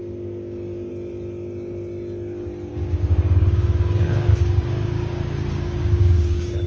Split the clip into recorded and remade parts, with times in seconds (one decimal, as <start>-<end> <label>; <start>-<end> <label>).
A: 0.0-0.9 remade; 0.9-2.7 recorded; 2.7-6.7 remade